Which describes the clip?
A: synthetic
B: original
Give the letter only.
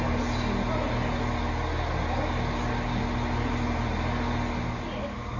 B